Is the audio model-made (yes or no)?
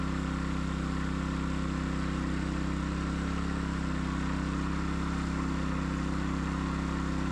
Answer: no